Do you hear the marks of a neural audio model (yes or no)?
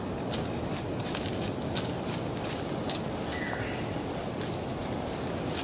no